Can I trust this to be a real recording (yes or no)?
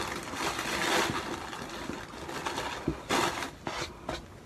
yes